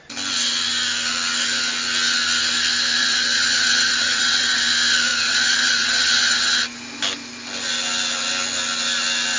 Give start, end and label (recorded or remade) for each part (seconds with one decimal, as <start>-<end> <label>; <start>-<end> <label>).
0.0-3.0 recorded; 3.0-4.6 remade; 4.6-5.1 recorded; 5.1-6.6 remade; 6.6-9.4 recorded